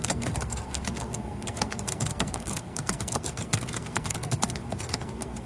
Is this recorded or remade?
remade